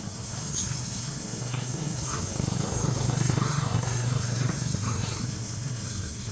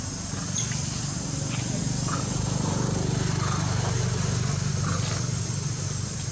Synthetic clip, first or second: first